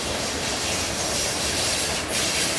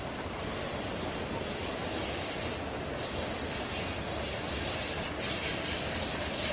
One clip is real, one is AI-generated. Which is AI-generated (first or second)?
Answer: first